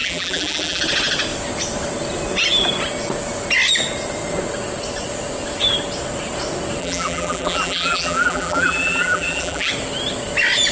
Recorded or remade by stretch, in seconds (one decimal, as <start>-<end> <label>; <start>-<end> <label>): 0.0-0.8 remade; 0.8-6.8 recorded; 6.8-9.7 remade; 9.7-10.7 recorded

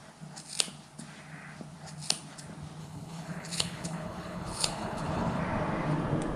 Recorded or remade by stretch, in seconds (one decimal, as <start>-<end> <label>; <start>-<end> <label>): 0.0-2.8 recorded; 2.8-5.4 remade; 5.4-6.4 recorded

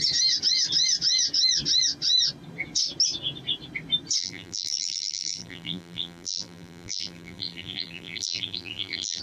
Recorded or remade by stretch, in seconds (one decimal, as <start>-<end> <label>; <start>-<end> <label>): 0.0-4.2 recorded; 4.2-9.2 remade

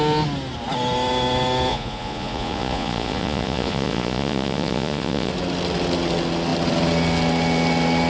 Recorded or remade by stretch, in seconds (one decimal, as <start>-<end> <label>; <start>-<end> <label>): 0.0-1.7 recorded; 1.7-5.3 remade; 5.3-8.1 recorded

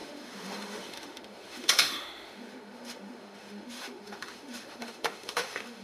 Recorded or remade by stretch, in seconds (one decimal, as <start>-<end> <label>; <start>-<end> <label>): 0.0-5.8 remade

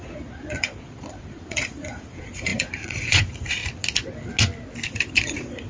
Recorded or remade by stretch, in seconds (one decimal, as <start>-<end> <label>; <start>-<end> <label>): 0.0-3.6 remade; 3.6-5.1 recorded; 5.1-5.7 remade

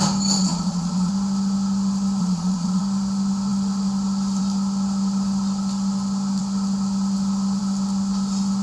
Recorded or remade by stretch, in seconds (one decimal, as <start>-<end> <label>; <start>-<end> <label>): 0.0-0.4 recorded; 0.4-1.1 remade; 1.1-2.2 recorded; 2.2-2.8 remade; 2.8-8.6 recorded

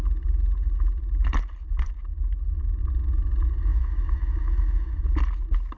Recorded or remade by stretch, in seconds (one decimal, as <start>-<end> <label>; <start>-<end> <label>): 0.0-3.7 recorded; 3.7-5.0 remade; 5.0-5.8 recorded